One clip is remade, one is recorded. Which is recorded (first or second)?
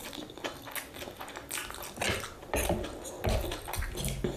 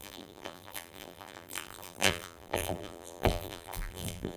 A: first